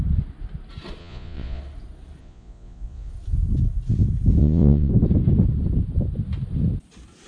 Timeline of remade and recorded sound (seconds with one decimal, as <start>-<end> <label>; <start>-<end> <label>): 0.0-1.0 recorded; 1.0-1.6 remade; 1.6-2.2 recorded; 2.2-3.1 remade; 3.1-4.4 recorded; 4.4-4.9 remade; 4.9-7.3 recorded